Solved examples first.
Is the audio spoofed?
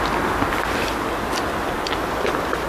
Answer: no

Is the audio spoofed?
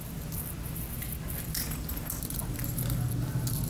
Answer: no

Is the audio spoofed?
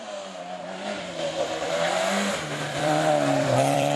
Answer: yes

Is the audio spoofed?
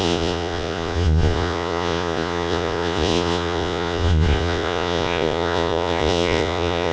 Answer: yes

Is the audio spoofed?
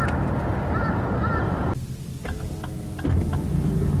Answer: no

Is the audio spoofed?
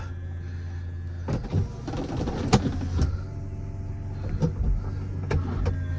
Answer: no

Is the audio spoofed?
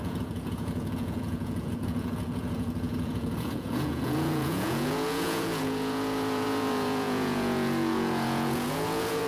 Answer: yes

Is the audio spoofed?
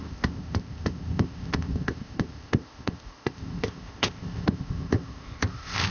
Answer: yes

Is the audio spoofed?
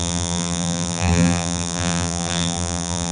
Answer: yes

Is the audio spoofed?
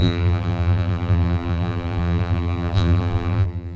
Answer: yes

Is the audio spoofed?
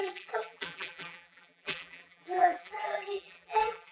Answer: yes